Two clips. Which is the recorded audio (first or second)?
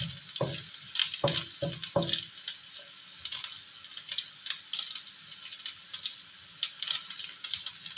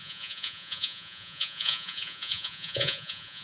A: first